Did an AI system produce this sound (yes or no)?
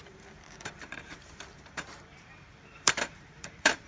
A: yes